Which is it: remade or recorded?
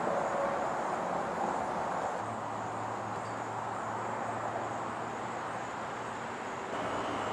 recorded